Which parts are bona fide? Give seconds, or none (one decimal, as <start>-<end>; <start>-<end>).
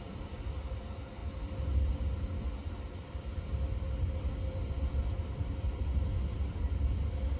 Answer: 0.0-7.4